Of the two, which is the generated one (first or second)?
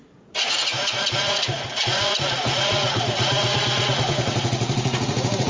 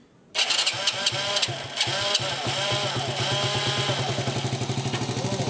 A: first